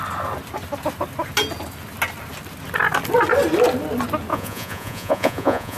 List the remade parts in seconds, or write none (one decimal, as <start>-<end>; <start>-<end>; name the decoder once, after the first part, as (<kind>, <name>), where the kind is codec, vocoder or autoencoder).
4.3-5.8 (vocoder, Vocos)